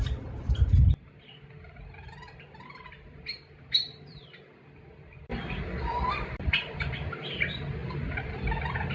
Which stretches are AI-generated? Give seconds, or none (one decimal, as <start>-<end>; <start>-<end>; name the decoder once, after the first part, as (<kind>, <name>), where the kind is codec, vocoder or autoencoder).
none